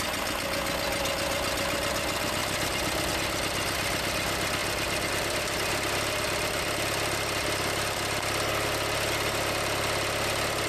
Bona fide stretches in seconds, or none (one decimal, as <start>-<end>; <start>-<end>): 0.0-2.4; 3.1-10.7